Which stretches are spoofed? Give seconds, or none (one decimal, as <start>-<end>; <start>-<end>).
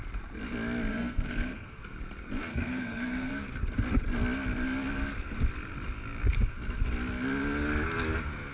0.9-1.8; 2.5-3.3